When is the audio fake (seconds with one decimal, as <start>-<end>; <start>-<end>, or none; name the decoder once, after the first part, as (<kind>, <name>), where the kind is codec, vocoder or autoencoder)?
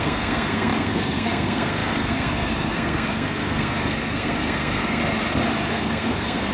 0.0-5.0 (codec, SNAC); 5.7-6.5